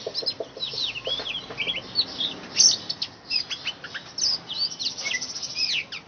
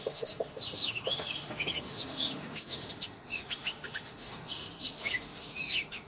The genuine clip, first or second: first